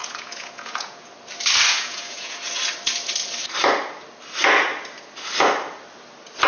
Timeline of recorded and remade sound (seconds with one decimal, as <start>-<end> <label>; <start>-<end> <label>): 0.0-1.1 remade; 1.1-1.7 recorded; 1.7-2.4 remade; 2.4-6.5 recorded